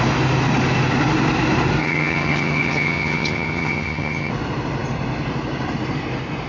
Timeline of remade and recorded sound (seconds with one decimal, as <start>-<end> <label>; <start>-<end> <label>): 0.0-1.8 recorded; 1.8-4.3 remade; 4.3-6.5 recorded